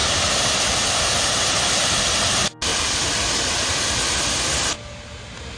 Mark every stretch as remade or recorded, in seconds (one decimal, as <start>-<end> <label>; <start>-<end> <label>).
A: 0.0-1.9 remade; 1.9-5.6 recorded